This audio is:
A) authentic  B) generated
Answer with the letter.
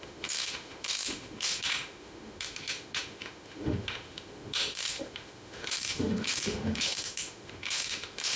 B